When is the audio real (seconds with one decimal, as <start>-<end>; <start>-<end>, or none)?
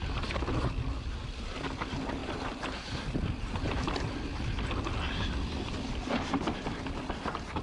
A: 0.0-2.2; 4.1-7.6